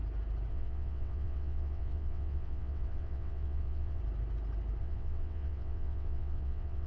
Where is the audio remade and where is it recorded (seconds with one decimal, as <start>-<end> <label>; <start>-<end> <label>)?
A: 0.0-0.5 recorded; 0.5-4.0 remade; 4.0-4.8 recorded; 4.8-6.9 remade